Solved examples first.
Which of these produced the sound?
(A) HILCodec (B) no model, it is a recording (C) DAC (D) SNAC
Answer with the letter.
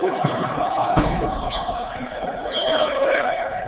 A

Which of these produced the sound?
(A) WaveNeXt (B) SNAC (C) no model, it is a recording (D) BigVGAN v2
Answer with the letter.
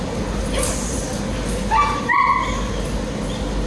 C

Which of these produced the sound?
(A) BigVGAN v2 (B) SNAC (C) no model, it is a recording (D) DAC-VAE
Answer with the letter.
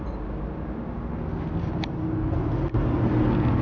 C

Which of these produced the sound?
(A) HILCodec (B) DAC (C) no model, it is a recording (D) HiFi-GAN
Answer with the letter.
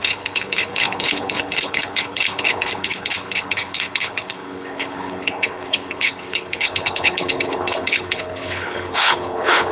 A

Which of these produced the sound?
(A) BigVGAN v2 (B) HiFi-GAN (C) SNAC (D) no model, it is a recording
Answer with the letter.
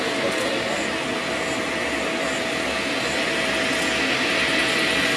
D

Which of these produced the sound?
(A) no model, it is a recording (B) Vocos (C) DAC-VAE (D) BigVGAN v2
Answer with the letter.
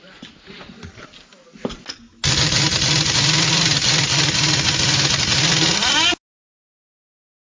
A